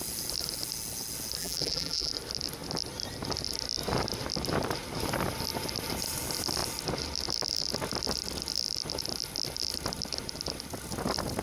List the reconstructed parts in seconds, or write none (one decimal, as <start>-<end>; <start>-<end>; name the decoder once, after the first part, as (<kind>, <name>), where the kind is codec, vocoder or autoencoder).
1.4-2.1 (vocoder, BigVGAN v2)